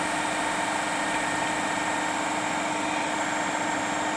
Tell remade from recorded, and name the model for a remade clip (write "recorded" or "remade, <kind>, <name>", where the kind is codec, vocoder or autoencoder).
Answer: recorded